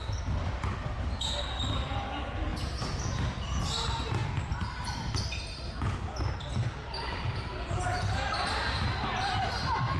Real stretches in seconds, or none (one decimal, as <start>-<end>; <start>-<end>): 0.0-10.0